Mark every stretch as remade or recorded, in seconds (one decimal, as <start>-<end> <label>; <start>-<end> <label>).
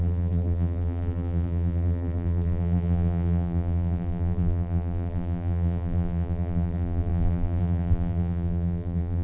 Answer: 0.0-9.2 remade